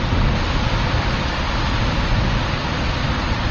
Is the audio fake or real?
real